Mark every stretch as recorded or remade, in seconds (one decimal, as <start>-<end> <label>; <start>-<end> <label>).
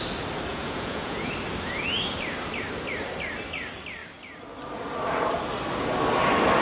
0.0-0.5 recorded; 0.5-1.3 remade; 1.3-6.6 recorded